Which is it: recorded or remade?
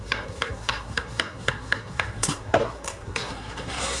remade